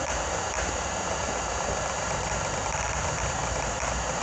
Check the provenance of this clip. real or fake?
fake